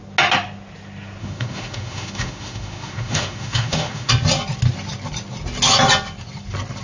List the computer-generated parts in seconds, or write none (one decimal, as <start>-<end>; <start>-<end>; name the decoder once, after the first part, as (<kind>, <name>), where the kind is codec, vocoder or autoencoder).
1.2-4.1 (autoencoder, DAC-VAE)

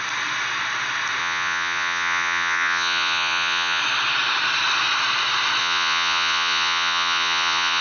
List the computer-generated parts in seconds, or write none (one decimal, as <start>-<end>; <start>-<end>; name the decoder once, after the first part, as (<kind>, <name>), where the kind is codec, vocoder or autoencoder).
1.2-3.8 (vocoder, Vocos); 5.6-7.8